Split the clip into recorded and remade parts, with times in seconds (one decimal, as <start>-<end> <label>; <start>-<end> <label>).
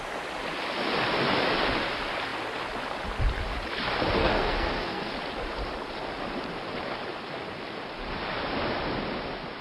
0.0-4.2 recorded; 4.2-5.1 remade; 5.1-9.6 recorded